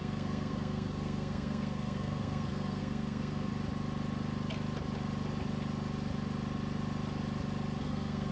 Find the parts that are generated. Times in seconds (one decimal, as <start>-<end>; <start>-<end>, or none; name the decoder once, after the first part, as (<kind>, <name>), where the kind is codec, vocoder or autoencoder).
0.0-3.5 (codec, SNAC); 7.8-8.3